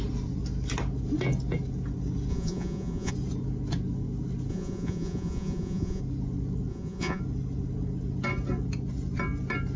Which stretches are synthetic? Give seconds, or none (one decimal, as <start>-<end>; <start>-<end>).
2.3-3.1; 4.5-6.0; 6.7-7.2